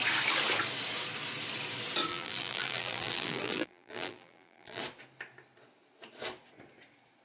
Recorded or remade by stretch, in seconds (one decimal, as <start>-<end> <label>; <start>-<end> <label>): 0.0-2.1 recorded; 2.1-4.8 remade; 4.8-7.2 recorded